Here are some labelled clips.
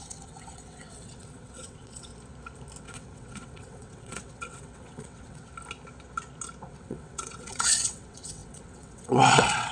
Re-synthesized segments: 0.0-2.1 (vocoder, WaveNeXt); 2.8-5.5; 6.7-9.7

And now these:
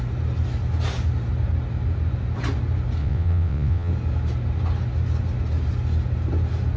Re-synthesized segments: 3.0-3.9 (vocoder, WaveNeXt)